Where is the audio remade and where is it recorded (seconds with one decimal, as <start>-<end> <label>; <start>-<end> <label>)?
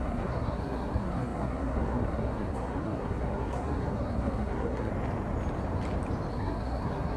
0.0-4.9 remade; 4.9-6.3 recorded; 6.3-7.2 remade